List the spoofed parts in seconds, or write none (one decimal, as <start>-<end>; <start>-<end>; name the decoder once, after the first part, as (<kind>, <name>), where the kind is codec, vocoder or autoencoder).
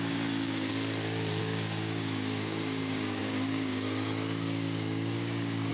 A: 0.0-0.7 (codec, DAC); 1.4-5.7